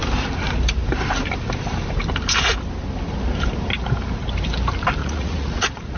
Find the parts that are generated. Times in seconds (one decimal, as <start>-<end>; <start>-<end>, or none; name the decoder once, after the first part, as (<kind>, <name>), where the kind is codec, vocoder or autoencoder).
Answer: 5.0-6.0 (vocoder, Vocos)